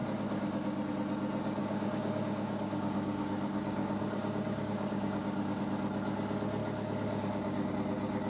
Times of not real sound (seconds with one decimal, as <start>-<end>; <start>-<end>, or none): 1.6-5.6; 6.6-7.7